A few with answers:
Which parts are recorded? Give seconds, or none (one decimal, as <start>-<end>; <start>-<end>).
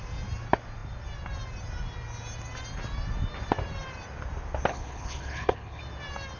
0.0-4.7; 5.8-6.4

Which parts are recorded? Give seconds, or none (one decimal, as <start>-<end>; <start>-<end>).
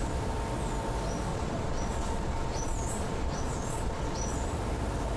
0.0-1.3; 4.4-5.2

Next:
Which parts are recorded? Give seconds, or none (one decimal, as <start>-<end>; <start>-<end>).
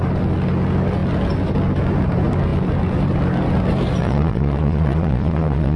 0.0-4.0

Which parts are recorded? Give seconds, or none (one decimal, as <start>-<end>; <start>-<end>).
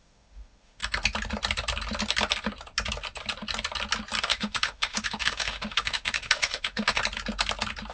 0.8-4.2; 7.0-7.9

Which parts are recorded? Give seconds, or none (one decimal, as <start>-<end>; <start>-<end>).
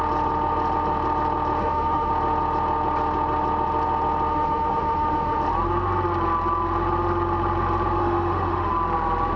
0.0-1.6; 2.1-4.3; 5.4-8.0; 8.7-9.4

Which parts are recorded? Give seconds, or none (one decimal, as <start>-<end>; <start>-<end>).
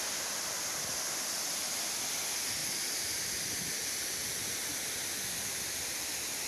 0.0-6.5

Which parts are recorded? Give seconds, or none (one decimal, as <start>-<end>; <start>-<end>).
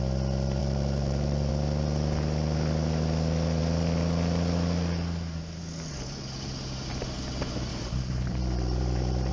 0.0-0.6; 1.5-7.7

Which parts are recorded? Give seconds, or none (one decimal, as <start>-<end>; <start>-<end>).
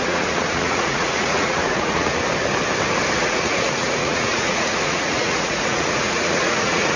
2.2-3.2